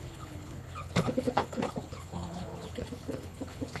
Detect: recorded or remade remade